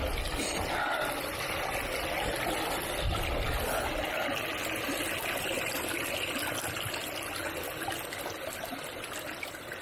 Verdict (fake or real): real